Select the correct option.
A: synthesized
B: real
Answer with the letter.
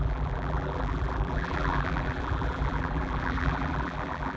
A